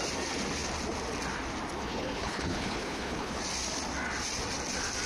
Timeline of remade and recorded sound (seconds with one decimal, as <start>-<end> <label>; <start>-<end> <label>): 0.0-1.8 recorded; 1.8-3.4 remade; 3.4-5.1 recorded